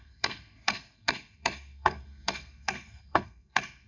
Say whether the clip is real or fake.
fake